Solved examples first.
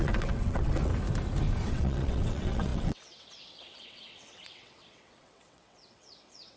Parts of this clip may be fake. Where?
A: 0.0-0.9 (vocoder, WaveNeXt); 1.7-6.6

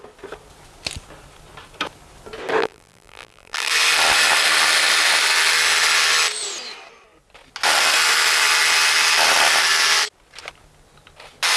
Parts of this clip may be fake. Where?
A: 2.6-3.7 (vocoder, BigVGAN v2)

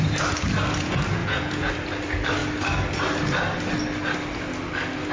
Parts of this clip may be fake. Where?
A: 1.2-1.7 (vocoder, Vocos)

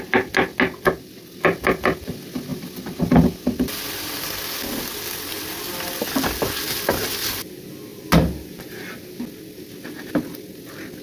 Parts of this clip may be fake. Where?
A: none

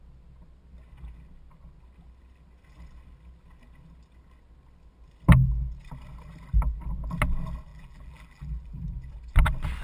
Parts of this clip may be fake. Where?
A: 7.7-8.8 (vocoder, BigVGAN v2)